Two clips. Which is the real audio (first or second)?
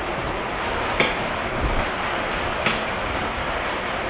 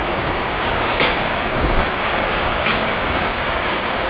first